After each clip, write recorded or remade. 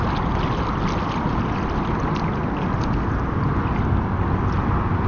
recorded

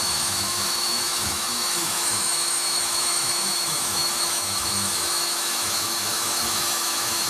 remade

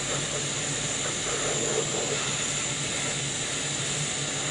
recorded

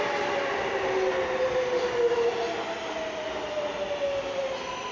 recorded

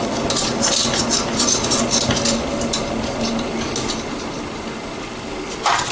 recorded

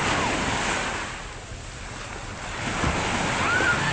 recorded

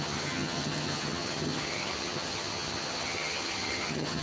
remade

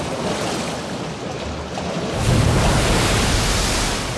recorded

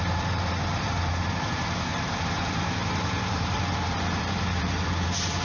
remade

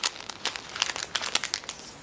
recorded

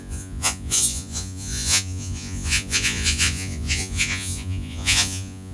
remade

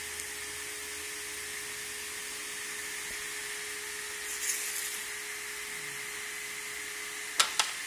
recorded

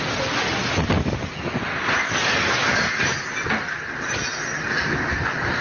recorded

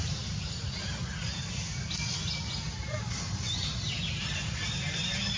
recorded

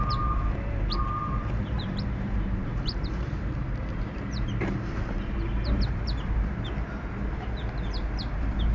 remade